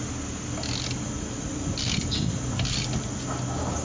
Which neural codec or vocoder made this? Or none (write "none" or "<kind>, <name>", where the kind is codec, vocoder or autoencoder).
none